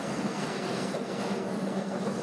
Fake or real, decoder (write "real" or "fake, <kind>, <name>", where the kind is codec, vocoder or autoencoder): fake, codec, SNAC